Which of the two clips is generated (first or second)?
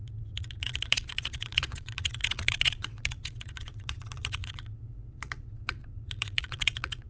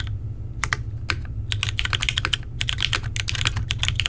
first